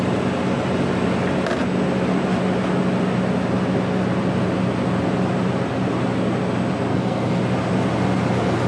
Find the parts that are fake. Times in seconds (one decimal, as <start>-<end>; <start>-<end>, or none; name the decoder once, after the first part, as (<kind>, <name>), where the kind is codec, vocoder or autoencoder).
6.9-7.4 (codec, SNAC)